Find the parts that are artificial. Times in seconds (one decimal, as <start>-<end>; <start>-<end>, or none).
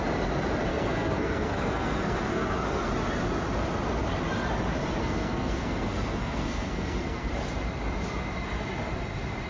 0.7-2.9; 5.0-7.3